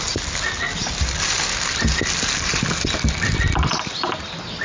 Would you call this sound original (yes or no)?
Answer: yes